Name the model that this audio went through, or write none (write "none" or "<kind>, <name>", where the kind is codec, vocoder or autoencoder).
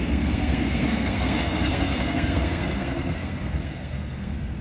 codec, SNAC